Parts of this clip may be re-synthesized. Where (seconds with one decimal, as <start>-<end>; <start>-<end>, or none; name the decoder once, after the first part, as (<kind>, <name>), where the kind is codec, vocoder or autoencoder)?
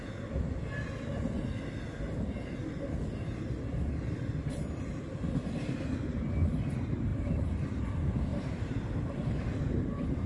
7.1-7.8 (vocoder, BigVGAN v2); 8.3-9.4